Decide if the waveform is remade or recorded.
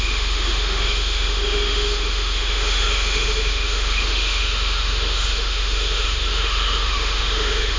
remade